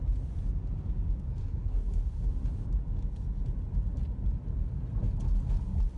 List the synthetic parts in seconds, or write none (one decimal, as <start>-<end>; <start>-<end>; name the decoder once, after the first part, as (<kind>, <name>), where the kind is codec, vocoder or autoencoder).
1.4-2.3 (codec, SNAC)